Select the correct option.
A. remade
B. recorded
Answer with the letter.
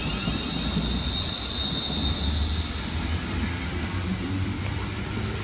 B